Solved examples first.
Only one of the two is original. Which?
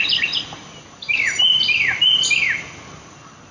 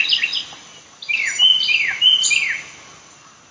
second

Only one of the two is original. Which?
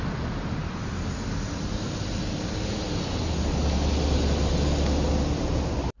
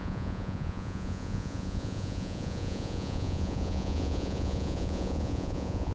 first